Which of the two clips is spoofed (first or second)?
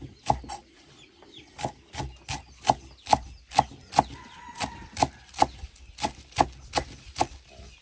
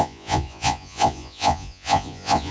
second